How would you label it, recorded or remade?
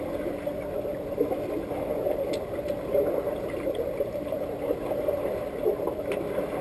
recorded